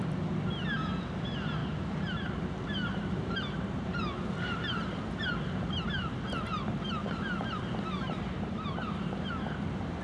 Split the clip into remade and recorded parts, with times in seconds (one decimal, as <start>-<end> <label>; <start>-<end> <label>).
0.0-1.6 recorded; 1.6-4.9 remade; 4.9-7.0 recorded; 7.0-9.3 remade; 9.3-10.0 recorded